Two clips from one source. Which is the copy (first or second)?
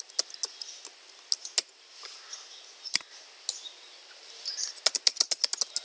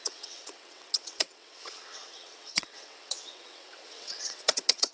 second